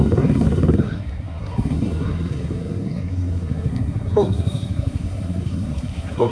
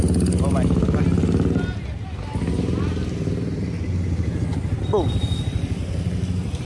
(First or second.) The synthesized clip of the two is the first